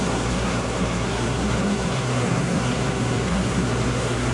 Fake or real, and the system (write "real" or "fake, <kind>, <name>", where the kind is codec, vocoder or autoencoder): fake, codec, SNAC